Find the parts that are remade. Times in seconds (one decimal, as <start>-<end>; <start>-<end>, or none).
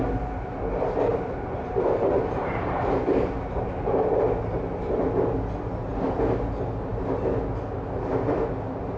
1.1-3.9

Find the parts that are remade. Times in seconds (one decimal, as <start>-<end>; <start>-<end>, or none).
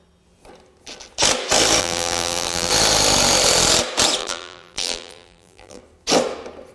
1.8-2.7; 4.2-5.8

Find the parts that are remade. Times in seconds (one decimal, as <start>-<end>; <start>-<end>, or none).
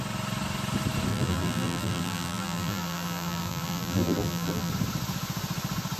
1.1-4.7